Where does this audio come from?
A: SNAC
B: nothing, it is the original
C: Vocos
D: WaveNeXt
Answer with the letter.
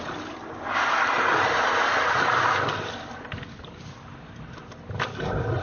B